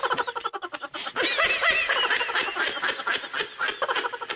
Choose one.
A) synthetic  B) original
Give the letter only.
B